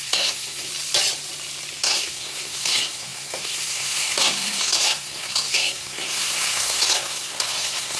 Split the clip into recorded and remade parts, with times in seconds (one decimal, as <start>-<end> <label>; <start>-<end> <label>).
0.0-0.7 remade; 0.7-1.8 recorded; 1.8-8.0 remade